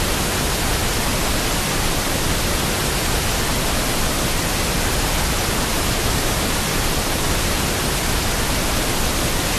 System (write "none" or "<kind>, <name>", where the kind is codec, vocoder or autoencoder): none